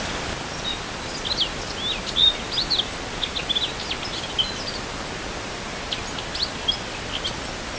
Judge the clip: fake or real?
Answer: real